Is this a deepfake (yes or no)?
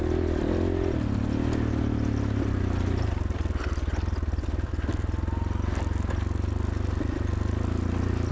no